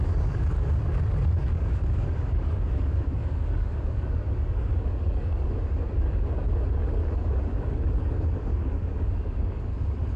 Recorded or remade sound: remade